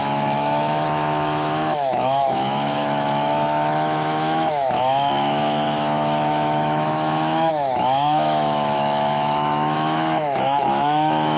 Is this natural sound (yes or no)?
no